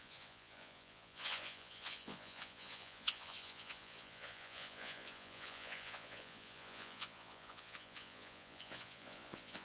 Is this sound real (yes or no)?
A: no